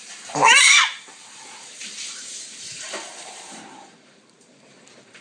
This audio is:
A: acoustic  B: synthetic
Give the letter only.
B